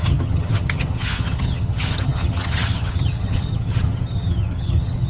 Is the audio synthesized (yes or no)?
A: yes